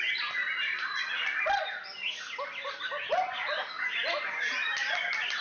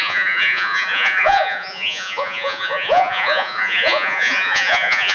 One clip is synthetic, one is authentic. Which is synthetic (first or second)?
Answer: second